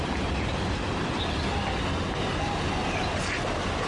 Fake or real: real